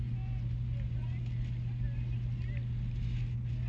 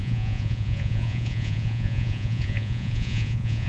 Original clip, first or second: first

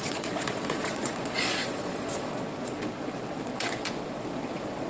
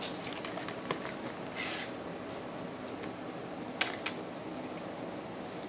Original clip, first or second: second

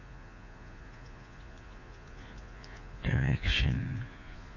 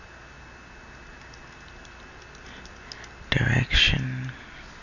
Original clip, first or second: second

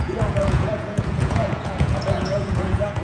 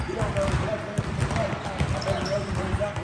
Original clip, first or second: second